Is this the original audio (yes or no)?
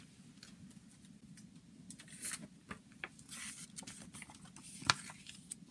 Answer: yes